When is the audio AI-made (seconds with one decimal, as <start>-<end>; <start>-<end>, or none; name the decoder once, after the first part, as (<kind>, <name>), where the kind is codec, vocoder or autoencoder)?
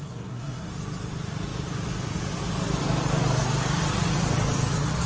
0.0-0.7 (codec, SNAC)